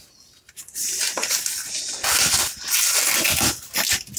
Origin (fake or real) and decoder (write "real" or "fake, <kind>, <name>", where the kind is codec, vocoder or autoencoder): real